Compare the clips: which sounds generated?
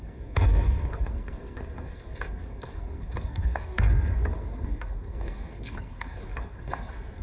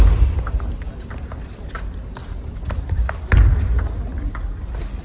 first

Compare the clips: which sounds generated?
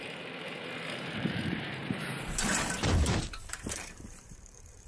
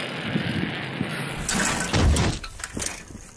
first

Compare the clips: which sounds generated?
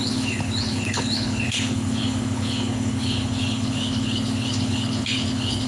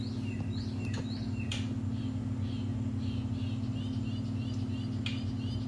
first